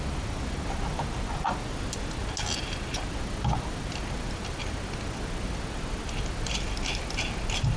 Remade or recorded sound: recorded